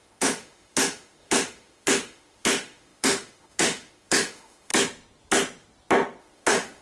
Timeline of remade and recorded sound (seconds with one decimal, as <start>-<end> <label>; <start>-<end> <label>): 0.0-4.7 remade; 4.7-6.2 recorded; 6.2-6.8 remade